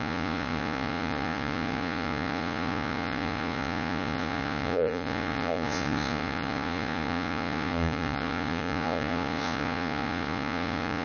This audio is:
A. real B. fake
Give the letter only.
B